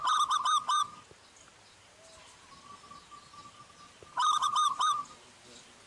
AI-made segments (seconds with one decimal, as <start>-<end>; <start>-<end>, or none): 4.2-5.0